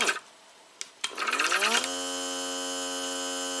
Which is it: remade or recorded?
recorded